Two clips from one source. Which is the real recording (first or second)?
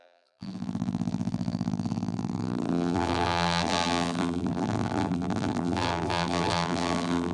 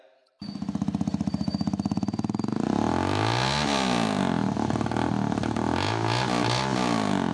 second